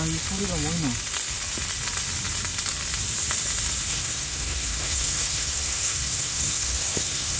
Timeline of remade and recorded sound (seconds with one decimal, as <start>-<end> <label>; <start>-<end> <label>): 0.0-3.9 recorded; 3.9-7.4 remade